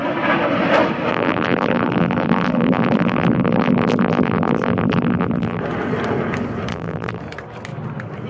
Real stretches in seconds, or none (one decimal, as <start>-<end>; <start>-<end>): 0.0-1.1; 5.6-6.7; 7.2-8.3